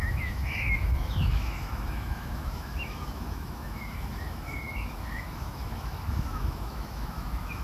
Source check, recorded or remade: remade